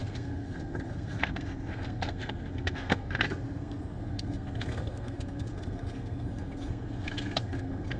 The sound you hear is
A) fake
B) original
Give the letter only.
A